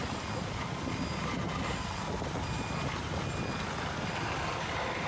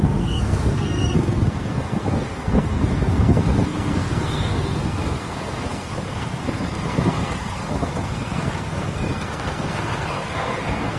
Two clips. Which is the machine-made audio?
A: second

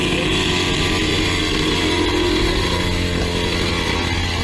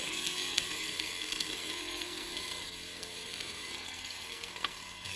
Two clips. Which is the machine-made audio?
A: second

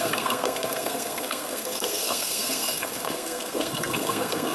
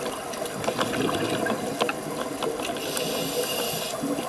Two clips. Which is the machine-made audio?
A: first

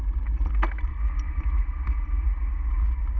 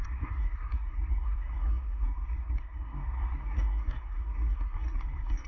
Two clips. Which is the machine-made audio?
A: second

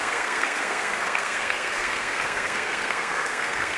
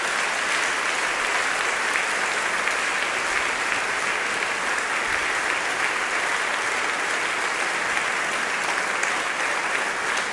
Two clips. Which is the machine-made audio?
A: first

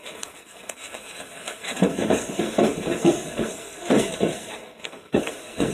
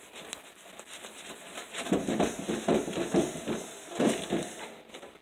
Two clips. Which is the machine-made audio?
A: first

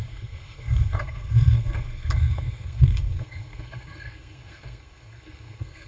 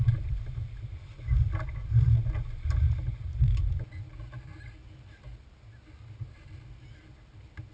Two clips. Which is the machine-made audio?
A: first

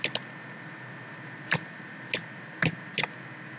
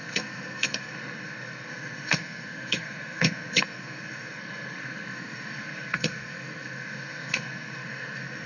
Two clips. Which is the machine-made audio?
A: second